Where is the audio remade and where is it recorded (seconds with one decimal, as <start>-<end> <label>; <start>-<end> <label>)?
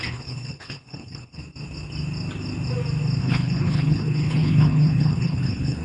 0.0-1.4 remade; 1.4-3.2 recorded; 3.2-5.8 remade